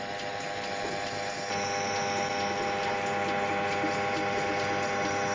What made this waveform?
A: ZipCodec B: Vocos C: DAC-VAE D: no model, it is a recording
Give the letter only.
D